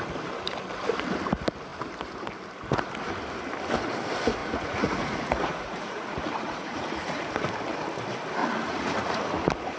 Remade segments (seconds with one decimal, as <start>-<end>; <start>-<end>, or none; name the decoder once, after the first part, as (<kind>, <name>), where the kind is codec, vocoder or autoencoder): 4.4-7.3 (vocoder, Vocos); 8.4-9.2